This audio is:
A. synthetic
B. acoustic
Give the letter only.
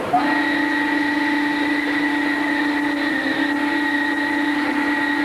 B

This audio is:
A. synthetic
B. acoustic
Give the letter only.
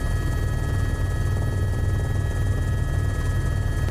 B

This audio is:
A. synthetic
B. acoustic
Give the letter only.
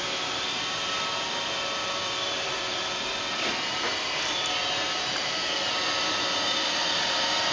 A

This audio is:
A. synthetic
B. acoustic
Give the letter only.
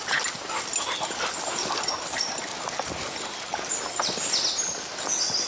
B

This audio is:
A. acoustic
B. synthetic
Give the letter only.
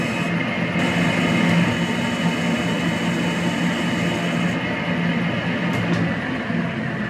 A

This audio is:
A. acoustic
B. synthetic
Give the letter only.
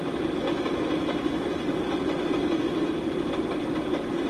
A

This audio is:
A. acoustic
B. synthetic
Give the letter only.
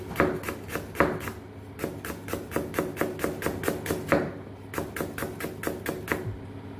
A